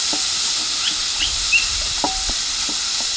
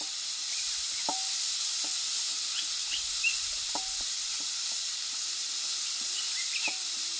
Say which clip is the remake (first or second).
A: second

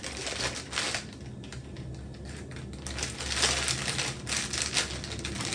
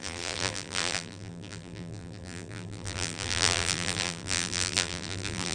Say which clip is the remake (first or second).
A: second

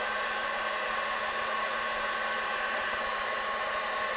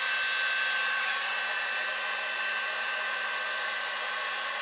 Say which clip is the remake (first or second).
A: first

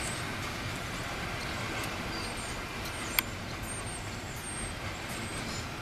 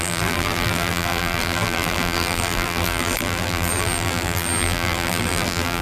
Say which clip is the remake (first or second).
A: second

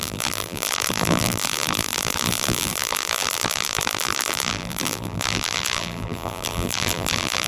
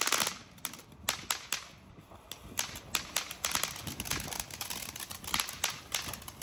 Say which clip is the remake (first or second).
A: first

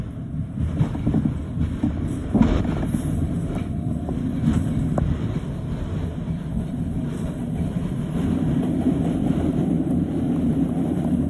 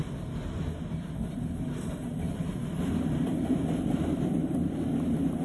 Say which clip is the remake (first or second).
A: first